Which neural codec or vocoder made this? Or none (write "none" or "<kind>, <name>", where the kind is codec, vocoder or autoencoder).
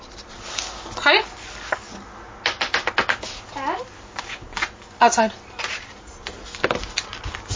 none